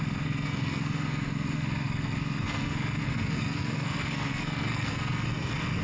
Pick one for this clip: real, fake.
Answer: fake